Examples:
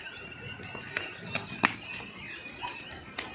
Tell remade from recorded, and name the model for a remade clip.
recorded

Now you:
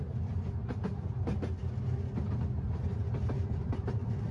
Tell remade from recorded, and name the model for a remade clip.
recorded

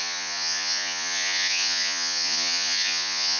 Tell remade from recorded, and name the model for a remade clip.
remade, vocoder, Vocos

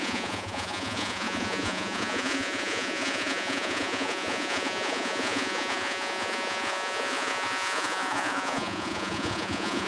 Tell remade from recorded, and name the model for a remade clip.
remade, vocoder, Vocos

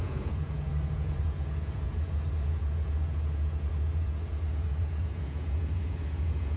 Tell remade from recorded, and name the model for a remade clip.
remade, vocoder, Vocos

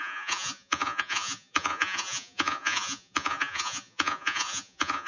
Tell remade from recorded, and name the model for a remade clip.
remade, vocoder, Vocos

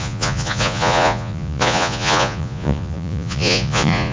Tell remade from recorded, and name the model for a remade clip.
remade, vocoder, Vocos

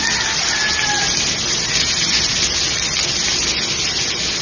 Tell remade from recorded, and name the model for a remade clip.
recorded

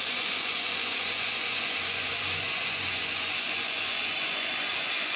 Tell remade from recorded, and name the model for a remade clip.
remade, vocoder, Vocos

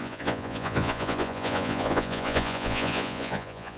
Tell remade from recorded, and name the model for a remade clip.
remade, vocoder, Vocos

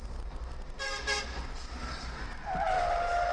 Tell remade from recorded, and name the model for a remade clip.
recorded